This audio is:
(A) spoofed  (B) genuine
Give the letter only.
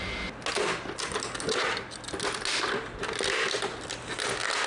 B